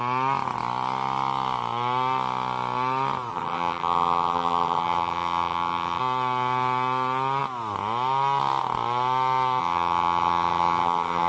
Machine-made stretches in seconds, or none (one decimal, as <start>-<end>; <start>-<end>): 3.3-6.0; 9.6-11.3